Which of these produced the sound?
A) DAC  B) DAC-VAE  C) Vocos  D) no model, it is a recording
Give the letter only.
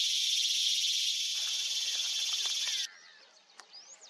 D